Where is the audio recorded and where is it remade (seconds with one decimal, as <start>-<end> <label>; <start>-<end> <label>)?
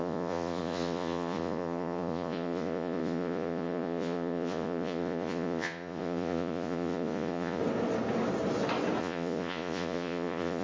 0.0-7.6 remade; 7.6-9.0 recorded; 9.0-10.6 remade